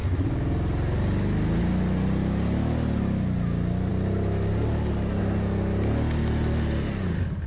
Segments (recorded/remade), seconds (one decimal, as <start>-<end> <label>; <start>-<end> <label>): 0.0-7.5 recorded